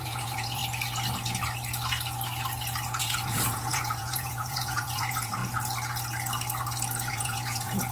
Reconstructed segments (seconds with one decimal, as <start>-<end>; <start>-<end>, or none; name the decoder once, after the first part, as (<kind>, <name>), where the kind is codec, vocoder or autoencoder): 0.0-0.6 (vocoder, Vocos); 3.0-5.4; 7.1-7.9